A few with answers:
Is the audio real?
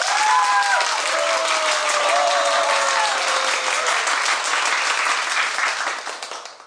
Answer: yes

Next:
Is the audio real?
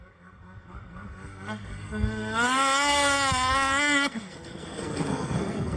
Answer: no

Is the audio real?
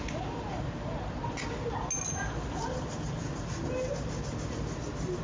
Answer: yes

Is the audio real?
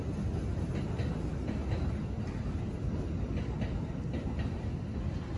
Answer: yes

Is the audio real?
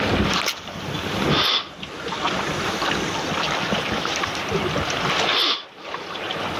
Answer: yes